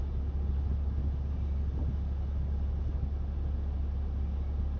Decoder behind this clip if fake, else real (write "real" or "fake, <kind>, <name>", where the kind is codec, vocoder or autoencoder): real